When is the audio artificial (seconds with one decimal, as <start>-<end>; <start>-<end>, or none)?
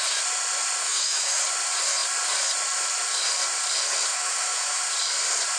0.8-1.4; 4.1-4.8